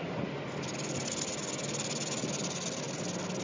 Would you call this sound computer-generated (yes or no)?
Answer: no